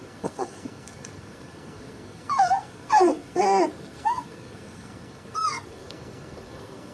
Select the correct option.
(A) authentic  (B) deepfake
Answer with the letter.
B